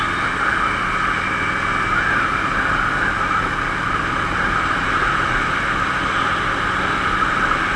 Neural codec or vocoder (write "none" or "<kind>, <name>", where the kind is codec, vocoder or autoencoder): none